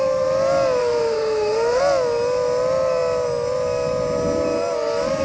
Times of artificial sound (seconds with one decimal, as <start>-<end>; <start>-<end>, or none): 0.8-1.8

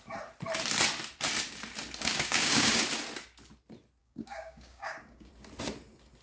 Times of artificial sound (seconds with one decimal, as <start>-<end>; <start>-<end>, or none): 2.0-2.8; 4.0-5.3

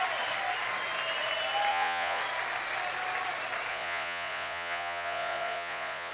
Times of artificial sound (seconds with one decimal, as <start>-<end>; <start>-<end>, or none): 1.7-2.2; 3.7-6.1

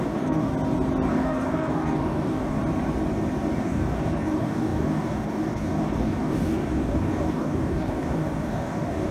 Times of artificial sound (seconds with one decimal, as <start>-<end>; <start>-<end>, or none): 0.0-0.5; 1.1-2.6; 3.6-9.1

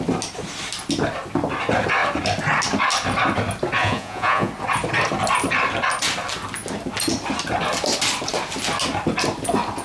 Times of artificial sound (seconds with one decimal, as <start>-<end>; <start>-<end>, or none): 3.8-4.5

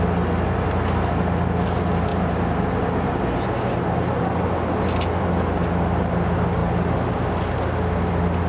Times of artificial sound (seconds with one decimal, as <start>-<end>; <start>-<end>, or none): none

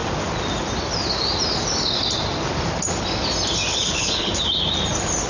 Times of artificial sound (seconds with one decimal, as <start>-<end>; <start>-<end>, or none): 3.7-4.3

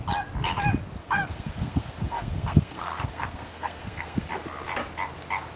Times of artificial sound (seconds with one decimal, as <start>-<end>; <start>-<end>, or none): 1.0-4.3